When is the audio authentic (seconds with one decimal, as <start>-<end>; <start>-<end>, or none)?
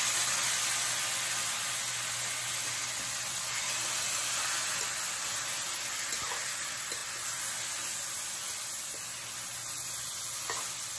0.0-11.0